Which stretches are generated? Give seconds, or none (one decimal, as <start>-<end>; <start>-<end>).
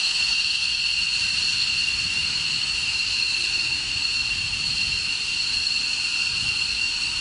0.0-0.7; 1.5-4.2; 6.7-7.2